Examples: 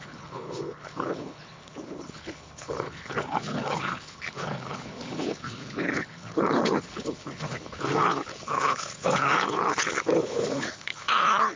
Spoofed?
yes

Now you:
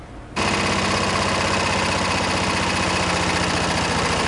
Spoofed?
no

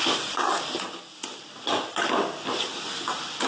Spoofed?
no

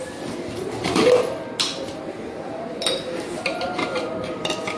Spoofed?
no